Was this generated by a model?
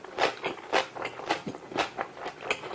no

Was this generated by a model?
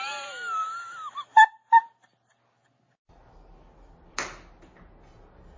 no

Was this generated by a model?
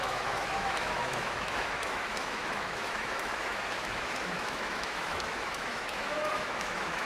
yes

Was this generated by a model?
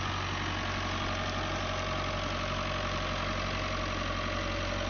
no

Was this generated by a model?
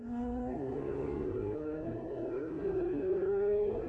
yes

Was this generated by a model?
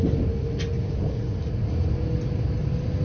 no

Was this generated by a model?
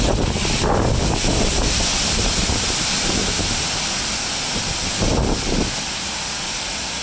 no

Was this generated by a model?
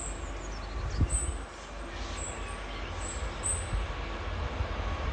no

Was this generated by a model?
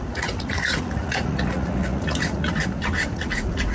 yes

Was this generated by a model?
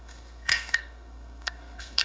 yes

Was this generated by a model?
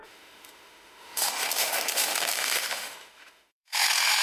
yes